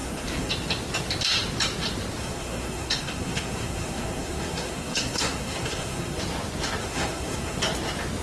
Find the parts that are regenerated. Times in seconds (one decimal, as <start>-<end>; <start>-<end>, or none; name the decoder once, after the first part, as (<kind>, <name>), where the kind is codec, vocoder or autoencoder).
0.0-0.5 (codec, SNAC); 2.2-6.2; 6.8-7.6